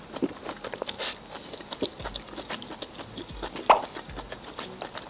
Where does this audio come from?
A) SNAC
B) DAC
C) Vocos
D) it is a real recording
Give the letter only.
D